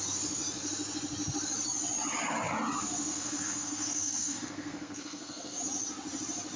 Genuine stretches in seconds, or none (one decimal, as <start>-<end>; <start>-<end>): 0.0-3.1; 5.6-6.6